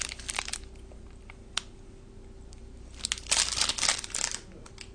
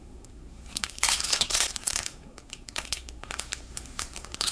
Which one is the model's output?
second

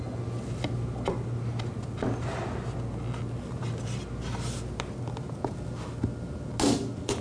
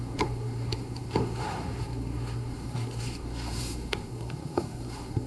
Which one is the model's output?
second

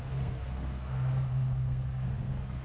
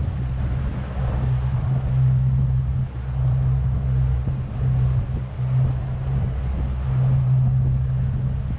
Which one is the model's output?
first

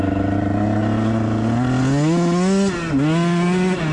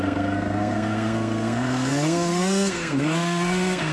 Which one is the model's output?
second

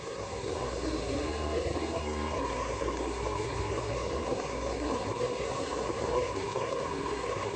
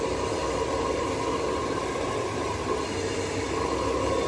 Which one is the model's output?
first